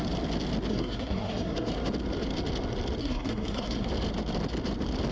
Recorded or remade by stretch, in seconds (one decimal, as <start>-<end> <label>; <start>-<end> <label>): 0.0-0.7 recorded; 0.7-1.7 remade; 1.7-3.0 recorded; 3.0-3.9 remade; 3.9-5.1 recorded